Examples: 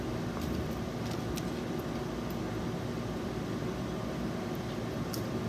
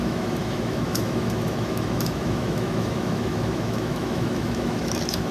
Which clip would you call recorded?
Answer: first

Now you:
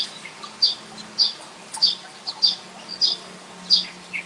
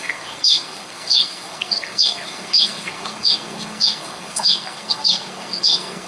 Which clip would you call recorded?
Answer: first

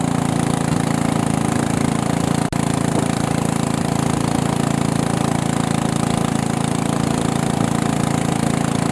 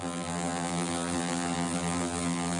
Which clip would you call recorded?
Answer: first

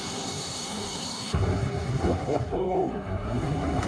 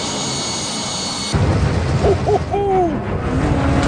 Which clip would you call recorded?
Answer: second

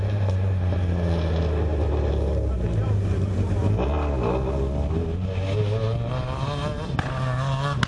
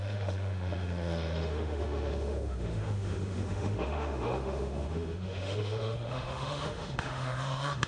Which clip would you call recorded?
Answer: first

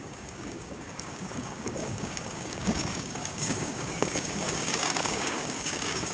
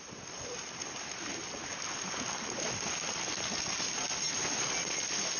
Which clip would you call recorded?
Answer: second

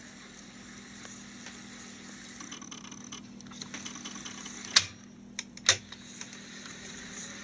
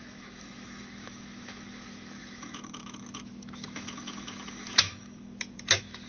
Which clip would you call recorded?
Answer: first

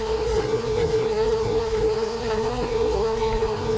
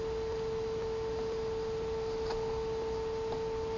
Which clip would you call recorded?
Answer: second